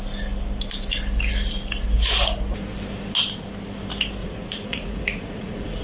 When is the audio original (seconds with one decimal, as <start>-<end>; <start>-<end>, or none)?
0.0-4.2

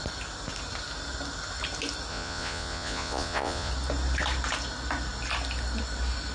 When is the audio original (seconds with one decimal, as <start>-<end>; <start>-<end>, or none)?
0.0-2.1; 3.7-6.3

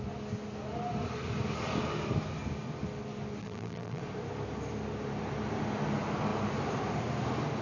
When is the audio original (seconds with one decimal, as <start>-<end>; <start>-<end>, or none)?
0.0-3.4; 4.0-7.6

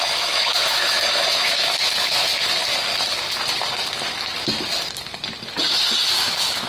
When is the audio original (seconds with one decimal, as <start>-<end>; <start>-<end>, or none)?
2.3-6.3

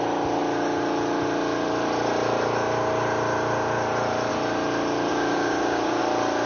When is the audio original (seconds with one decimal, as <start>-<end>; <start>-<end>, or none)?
0.0-5.1; 6.0-6.5

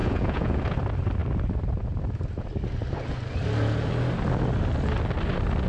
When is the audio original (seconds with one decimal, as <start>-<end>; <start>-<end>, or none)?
0.6-5.7